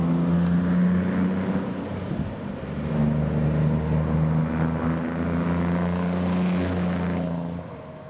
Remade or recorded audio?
recorded